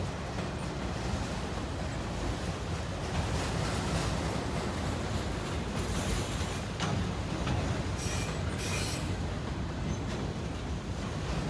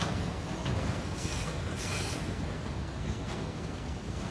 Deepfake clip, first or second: second